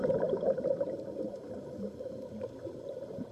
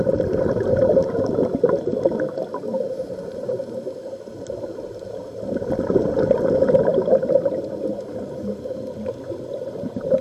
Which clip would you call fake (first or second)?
first